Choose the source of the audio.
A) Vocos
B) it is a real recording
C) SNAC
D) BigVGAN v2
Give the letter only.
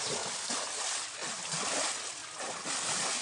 B